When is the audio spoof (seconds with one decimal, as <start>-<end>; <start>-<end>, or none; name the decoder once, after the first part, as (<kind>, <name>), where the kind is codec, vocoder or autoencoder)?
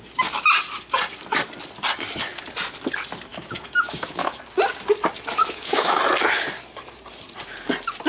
3.3-4.4 (autoencoder, DAC-VAE); 5.4-6.0